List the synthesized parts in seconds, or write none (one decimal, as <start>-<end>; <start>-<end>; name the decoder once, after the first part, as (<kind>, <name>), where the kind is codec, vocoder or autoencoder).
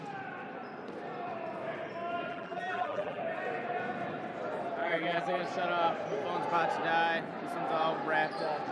2.3-3.2 (vocoder, BigVGAN v2); 4.8-5.4